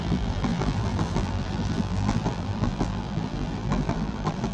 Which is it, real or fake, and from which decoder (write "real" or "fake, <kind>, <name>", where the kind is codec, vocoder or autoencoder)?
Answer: fake, vocoder, BigVGAN v2